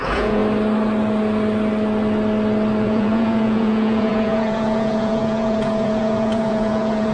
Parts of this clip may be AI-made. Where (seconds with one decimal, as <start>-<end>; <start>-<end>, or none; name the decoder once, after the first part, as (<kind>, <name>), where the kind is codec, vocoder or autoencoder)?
0.0-0.4 (vocoder, Vocos); 2.8-7.1